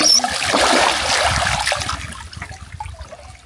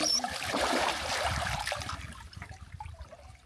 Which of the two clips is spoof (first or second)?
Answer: second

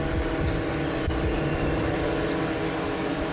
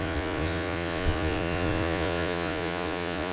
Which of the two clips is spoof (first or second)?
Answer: second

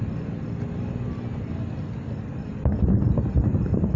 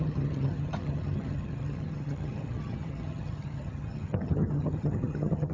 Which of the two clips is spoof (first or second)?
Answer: second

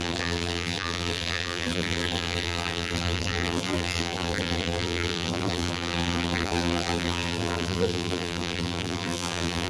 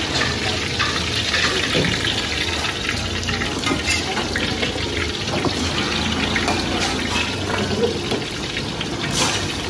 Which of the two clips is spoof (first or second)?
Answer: first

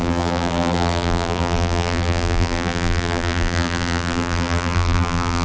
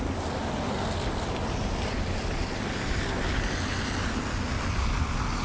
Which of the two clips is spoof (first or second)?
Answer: first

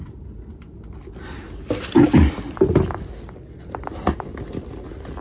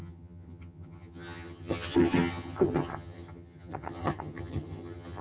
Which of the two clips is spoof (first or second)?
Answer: second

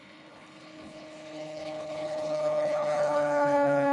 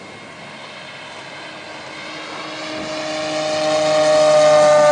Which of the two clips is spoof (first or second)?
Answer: first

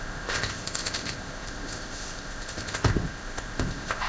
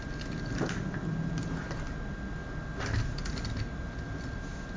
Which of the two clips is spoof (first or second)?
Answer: first